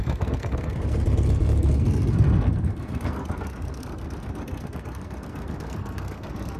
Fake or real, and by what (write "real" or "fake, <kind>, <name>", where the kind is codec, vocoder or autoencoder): fake, codec, SNAC